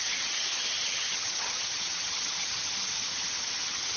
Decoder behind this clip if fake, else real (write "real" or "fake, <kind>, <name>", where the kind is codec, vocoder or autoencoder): fake, vocoder, HiFi-GAN